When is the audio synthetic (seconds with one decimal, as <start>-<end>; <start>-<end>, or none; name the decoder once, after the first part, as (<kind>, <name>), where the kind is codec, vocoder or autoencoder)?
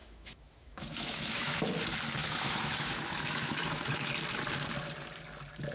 0.0-1.6 (autoencoder, DAC-VAE); 2.2-4.1